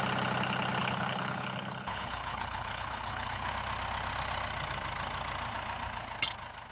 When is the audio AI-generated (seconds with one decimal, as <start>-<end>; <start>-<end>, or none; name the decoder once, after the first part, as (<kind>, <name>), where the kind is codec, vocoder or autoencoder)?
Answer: 0.8-3.5 (codec, HILCodec)